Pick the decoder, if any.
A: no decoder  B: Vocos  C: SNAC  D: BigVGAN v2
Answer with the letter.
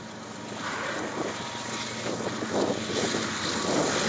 A